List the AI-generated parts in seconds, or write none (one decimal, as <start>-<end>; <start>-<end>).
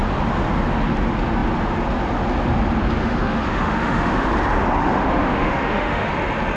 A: 3.0-4.3; 4.8-6.1